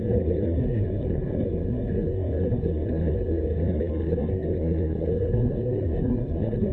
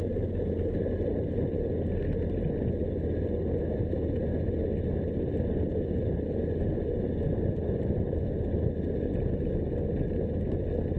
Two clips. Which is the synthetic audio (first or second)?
first